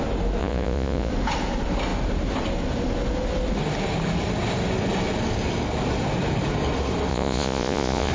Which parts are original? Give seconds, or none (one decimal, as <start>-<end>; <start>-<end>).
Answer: 0.0-0.4; 1.1-7.1